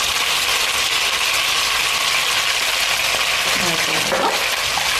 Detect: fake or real real